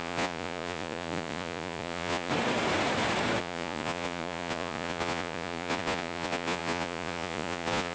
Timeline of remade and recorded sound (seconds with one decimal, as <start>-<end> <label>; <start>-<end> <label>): 0.0-2.3 remade; 2.3-3.4 recorded; 3.4-7.9 remade